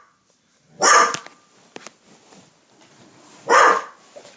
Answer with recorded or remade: recorded